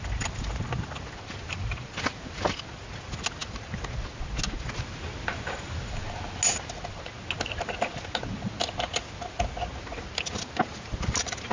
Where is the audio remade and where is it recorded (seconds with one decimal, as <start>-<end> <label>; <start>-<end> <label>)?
0.0-11.5 recorded